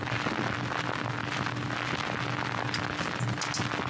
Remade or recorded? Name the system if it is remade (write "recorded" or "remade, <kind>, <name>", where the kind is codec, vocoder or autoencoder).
recorded